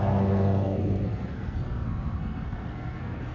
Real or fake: fake